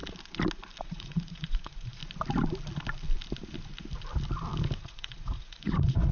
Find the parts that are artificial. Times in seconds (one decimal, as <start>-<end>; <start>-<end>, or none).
0.8-2.0; 4.8-6.1